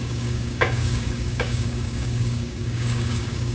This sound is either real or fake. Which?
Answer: fake